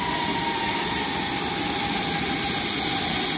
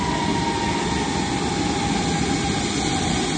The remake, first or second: first